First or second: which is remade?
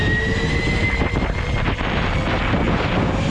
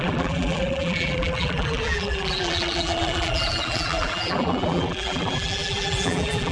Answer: second